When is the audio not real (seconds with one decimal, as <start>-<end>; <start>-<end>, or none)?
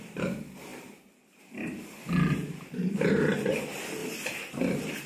0.0-5.1